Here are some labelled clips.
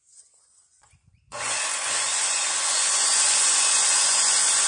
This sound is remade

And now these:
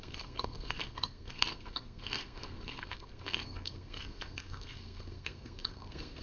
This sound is remade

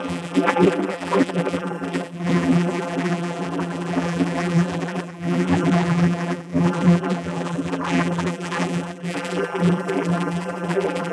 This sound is remade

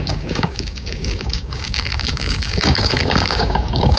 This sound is remade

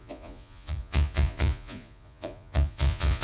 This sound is remade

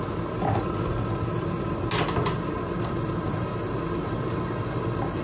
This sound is recorded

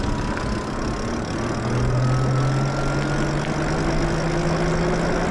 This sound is recorded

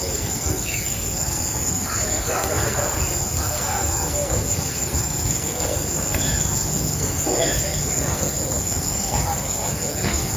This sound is remade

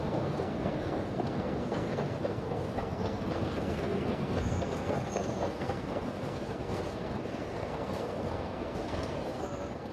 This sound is remade